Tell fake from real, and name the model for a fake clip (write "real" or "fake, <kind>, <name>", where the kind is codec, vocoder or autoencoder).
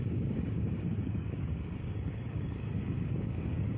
fake, codec, DAC